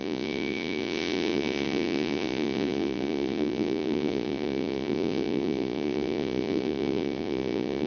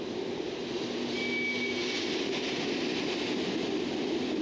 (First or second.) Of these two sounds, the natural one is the second